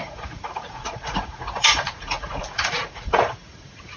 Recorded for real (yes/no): no